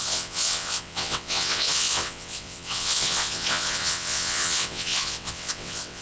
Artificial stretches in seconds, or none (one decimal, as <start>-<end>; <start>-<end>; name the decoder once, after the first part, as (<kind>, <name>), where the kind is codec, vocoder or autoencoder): 0.0-6.0 (vocoder, WaveNeXt)